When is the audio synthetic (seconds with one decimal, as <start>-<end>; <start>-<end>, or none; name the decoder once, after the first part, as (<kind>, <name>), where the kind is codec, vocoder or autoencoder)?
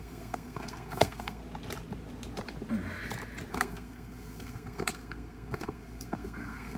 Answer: 0.0-1.4 (codec, SNAC); 3.5-6.8